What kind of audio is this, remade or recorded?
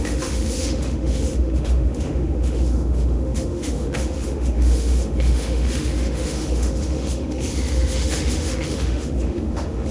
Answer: remade